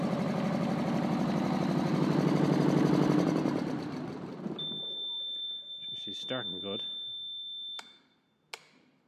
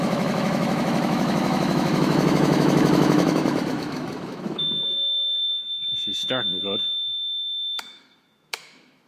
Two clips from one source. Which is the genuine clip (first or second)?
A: first